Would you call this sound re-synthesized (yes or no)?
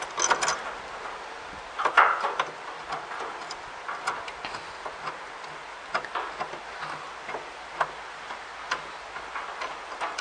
no